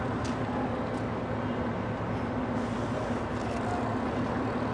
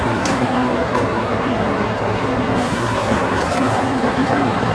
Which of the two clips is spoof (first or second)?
second